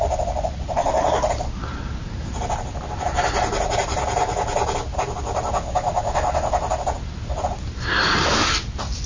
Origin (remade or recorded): recorded